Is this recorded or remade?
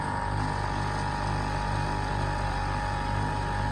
recorded